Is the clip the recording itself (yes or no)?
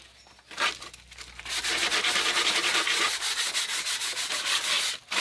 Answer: yes